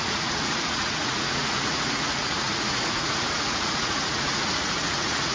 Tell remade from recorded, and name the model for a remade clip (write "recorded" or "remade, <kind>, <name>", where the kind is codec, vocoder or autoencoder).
remade, vocoder, Vocos